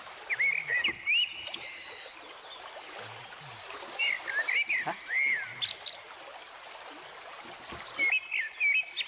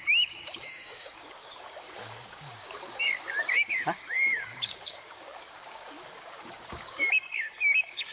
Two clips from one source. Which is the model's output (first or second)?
second